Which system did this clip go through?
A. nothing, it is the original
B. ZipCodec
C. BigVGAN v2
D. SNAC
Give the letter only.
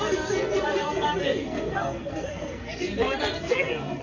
D